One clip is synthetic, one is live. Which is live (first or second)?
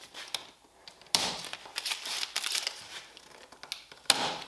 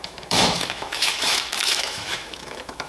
first